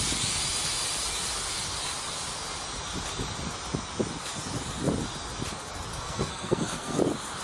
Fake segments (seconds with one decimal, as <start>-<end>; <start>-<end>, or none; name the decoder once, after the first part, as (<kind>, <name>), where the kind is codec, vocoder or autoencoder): 5.9-7.0 (codec, SNAC)